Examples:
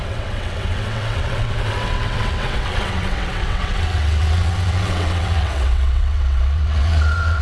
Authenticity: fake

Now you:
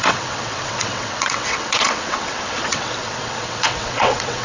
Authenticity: fake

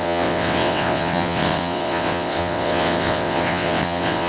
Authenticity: fake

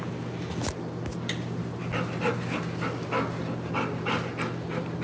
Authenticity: real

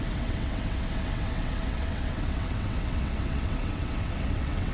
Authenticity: fake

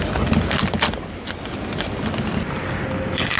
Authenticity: real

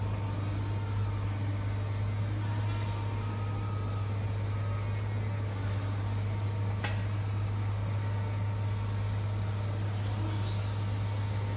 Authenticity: real